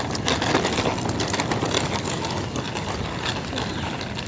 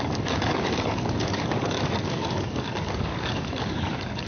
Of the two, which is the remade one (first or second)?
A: second